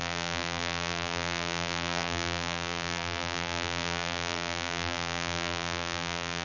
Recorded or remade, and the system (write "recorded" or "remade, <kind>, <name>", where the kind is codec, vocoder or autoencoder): remade, vocoder, BigVGAN v2